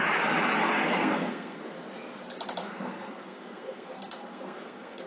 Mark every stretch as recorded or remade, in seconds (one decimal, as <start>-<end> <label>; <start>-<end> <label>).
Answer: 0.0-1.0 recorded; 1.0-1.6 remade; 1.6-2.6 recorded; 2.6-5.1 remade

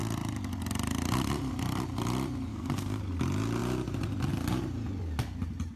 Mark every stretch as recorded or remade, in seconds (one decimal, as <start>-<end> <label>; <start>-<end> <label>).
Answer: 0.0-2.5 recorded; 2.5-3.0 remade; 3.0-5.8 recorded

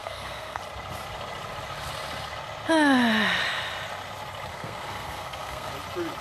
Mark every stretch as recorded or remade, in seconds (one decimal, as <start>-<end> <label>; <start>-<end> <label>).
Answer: 0.0-0.6 remade; 0.6-4.5 recorded; 4.5-5.7 remade; 5.7-6.2 recorded

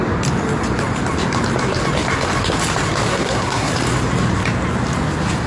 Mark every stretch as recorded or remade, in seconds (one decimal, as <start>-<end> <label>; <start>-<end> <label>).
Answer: 0.0-3.1 recorded; 3.1-3.7 remade; 3.7-5.5 recorded

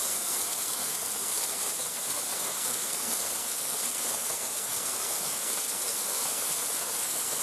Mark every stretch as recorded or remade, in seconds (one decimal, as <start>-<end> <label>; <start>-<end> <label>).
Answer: 0.0-7.4 remade